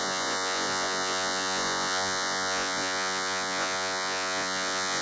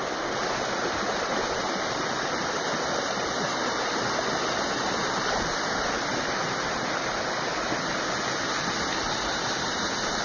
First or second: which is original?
second